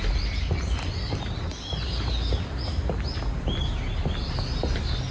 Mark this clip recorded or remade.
recorded